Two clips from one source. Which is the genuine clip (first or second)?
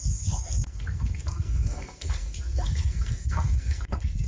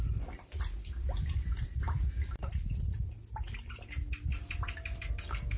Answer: second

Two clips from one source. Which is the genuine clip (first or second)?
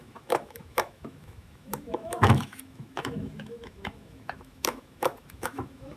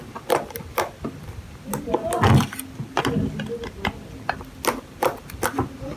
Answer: second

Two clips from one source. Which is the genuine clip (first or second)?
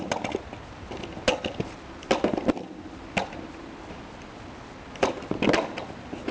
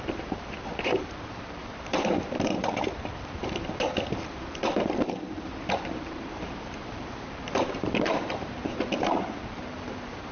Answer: first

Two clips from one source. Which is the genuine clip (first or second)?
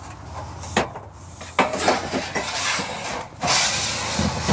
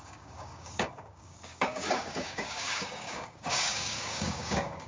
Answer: first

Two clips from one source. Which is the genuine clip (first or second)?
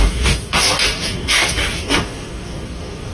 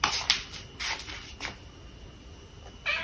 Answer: second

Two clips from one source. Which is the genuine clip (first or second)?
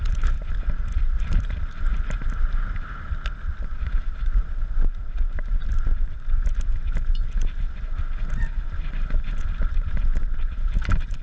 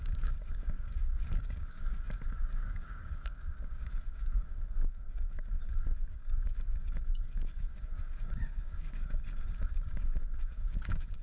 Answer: first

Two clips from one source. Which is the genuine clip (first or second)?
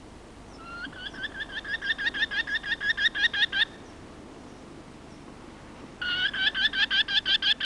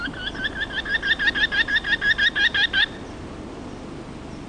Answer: first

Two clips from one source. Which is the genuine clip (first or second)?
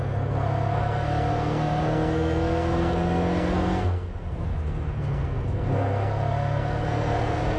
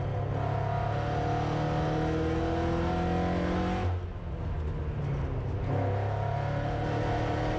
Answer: second